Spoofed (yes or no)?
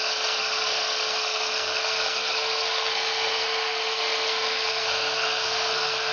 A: yes